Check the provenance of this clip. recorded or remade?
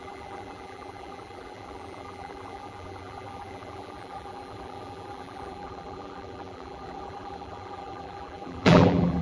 remade